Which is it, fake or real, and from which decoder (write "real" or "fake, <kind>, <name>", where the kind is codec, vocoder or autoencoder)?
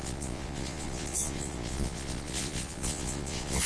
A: fake, vocoder, Vocos